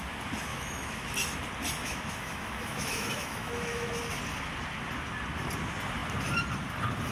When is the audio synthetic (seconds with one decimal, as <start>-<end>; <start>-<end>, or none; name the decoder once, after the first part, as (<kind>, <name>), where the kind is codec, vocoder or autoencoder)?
0.5-1.1 (autoencoder, DAC-VAE); 1.8-4.2